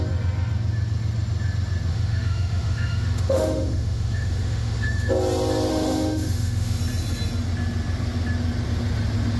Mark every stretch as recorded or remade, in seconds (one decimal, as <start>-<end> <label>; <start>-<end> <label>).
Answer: 0.0-1.9 recorded; 1.9-5.1 remade; 5.1-5.7 recorded; 5.7-6.8 remade; 6.8-9.4 recorded